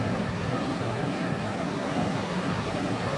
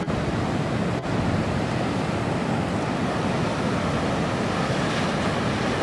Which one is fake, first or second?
first